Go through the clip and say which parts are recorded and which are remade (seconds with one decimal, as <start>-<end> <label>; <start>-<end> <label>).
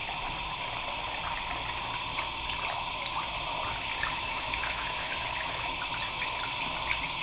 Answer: 0.0-4.0 recorded; 4.0-5.9 remade; 5.9-7.2 recorded